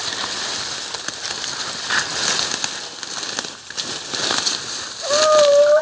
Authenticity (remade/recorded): recorded